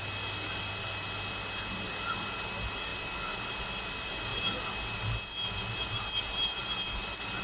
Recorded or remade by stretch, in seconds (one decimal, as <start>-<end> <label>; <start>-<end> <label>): 0.0-7.4 recorded